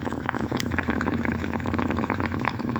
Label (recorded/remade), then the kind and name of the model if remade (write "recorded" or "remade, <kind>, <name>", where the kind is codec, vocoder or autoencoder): remade, autoencoder, DAC-VAE